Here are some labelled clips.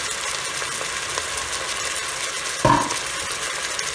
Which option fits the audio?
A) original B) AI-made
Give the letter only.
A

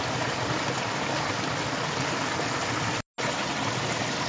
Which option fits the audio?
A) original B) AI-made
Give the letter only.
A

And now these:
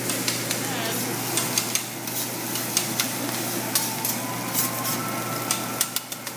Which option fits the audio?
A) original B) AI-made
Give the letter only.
A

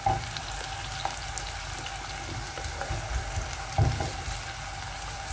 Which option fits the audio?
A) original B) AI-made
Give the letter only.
A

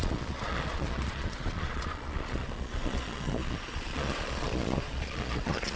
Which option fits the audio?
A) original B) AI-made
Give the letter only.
B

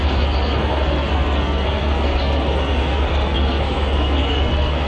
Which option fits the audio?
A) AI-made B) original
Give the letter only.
A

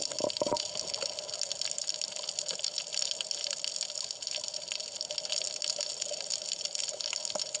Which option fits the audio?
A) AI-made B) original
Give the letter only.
B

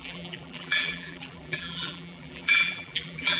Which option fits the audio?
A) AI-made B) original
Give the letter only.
A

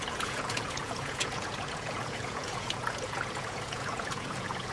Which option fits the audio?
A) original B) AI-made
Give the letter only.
B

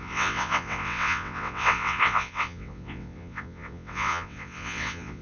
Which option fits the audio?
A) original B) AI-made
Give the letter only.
B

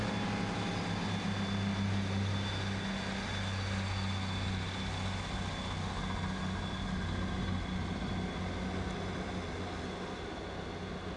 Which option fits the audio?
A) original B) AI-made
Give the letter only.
A